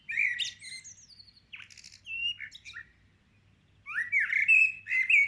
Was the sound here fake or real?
real